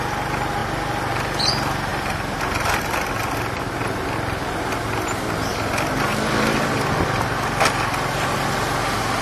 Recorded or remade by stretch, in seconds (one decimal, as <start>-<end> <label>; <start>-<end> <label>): 0.0-9.2 recorded